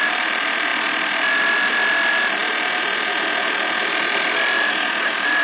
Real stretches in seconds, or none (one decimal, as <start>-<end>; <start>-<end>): 0.0-5.4